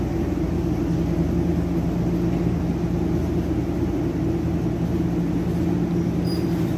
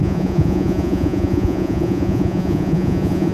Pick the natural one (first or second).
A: first